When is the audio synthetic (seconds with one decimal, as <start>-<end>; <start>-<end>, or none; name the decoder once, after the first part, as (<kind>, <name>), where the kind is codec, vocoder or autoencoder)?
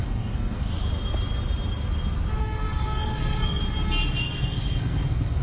0.0-0.7 (codec, SNAC); 2.4-3.6; 4.2-5.4